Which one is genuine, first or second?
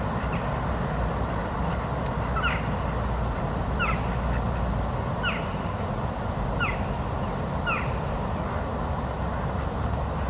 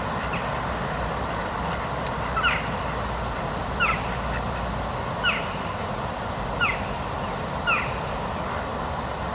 first